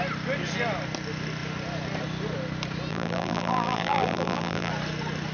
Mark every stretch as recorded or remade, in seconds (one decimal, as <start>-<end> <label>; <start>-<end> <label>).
0.0-2.9 recorded; 2.9-4.7 remade; 4.7-5.3 recorded